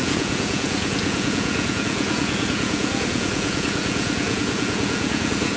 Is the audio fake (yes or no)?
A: yes